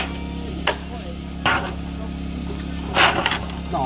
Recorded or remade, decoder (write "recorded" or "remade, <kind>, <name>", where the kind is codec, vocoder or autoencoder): recorded